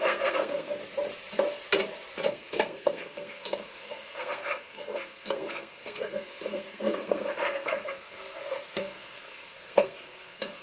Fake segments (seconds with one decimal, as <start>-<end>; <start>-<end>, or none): 0.0-0.8; 2.3-10.6